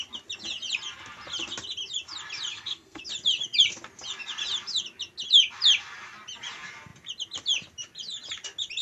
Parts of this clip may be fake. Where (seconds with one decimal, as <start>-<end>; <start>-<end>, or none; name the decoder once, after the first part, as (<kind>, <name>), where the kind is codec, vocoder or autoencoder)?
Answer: 2.5-3.0 (codec, SNAC)